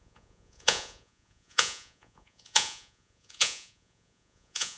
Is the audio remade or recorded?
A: remade